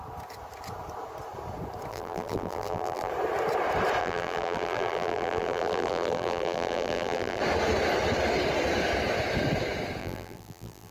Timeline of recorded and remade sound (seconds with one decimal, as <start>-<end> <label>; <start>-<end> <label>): 0.0-1.9 recorded; 1.9-3.1 remade; 3.1-4.0 recorded; 4.0-7.4 remade; 7.4-10.0 recorded; 10.0-10.9 remade